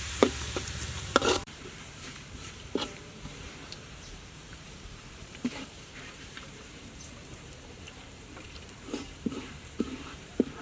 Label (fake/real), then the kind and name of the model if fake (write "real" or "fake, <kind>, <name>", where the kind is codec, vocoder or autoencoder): fake, vocoder, BigVGAN v2